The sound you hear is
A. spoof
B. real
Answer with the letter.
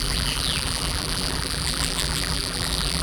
A